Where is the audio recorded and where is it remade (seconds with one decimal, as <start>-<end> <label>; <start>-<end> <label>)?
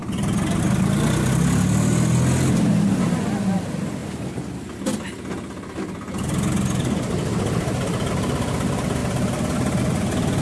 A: 0.0-0.6 remade; 0.6-9.0 recorded; 9.0-9.8 remade; 9.8-10.4 recorded